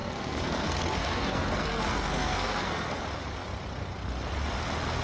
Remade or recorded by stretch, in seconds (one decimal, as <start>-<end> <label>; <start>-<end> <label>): 0.0-3.0 remade; 3.0-5.0 recorded